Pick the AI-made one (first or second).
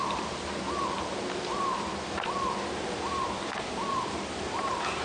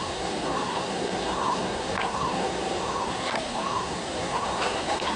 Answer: second